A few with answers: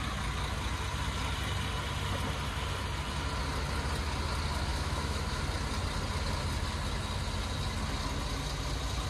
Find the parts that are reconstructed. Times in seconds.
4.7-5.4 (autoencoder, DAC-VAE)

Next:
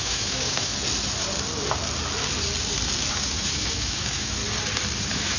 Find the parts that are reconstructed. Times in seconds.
0.0-0.7 (autoencoder, DAC-VAE); 3.1-4.4; 5.0-5.4

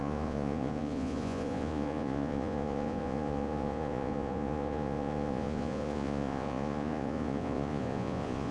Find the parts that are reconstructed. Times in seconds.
0.0-8.5 (vocoder, Vocos)

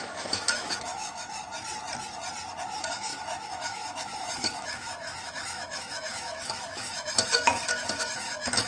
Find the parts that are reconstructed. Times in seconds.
0.0-1.4 (autoencoder, DAC-VAE); 2.6-8.7

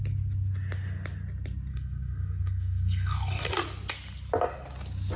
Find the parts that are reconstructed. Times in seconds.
1.7-3.5 (codec, SNAC)

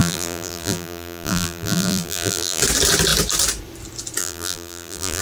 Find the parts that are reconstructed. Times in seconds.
0.0-2.6 (vocoder, BigVGAN v2); 4.2-5.2

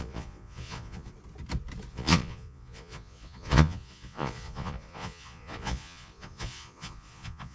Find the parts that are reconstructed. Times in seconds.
0.0-1.1 (vocoder, Vocos); 1.9-7.5